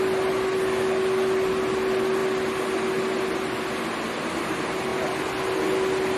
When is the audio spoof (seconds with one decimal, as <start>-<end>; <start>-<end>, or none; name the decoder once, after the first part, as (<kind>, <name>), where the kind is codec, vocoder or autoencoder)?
none